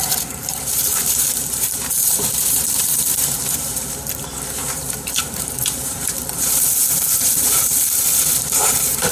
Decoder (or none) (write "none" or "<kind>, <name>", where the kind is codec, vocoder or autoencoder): vocoder, BigVGAN v2